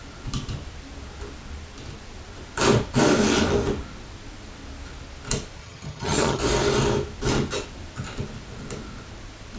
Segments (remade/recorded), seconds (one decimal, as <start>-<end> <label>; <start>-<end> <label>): 0.0-5.6 recorded; 5.6-6.4 remade; 6.4-9.6 recorded